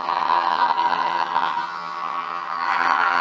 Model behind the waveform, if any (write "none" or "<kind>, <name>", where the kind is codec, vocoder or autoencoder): vocoder, HiFi-GAN